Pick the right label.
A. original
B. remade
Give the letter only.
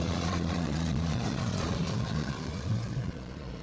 B